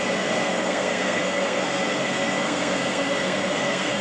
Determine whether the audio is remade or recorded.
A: remade